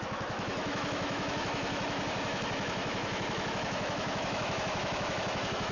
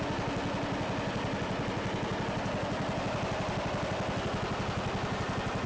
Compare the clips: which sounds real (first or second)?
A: second